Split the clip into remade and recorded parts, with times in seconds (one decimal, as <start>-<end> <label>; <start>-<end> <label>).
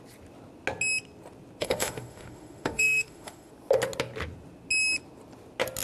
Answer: 0.0-1.6 recorded; 1.6-3.5 remade; 3.5-5.8 recorded